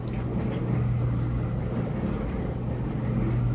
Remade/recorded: recorded